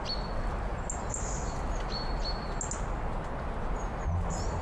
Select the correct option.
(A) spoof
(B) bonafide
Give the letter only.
B